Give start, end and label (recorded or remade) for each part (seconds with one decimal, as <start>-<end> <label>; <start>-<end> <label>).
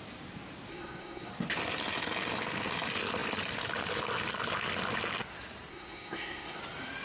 0.0-0.7 recorded; 0.7-1.3 remade; 1.3-5.7 recorded; 5.7-6.6 remade; 6.6-7.0 recorded